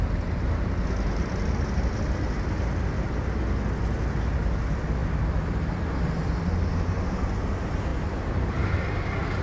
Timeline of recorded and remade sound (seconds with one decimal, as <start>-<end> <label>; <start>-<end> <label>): 0.0-9.4 recorded